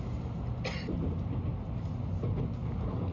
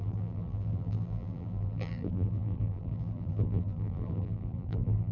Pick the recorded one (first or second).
first